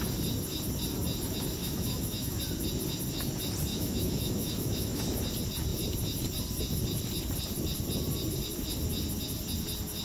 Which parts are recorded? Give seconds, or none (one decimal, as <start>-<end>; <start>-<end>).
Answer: 0.0-1.6; 2.4-3.7; 5.0-10.0